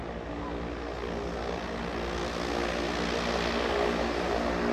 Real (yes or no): yes